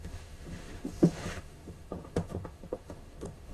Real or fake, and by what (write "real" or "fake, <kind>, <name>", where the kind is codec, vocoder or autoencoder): fake, autoencoder, DAC-VAE